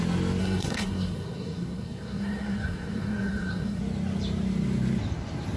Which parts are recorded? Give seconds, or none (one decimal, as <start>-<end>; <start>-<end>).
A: 0.0-0.4; 3.8-5.6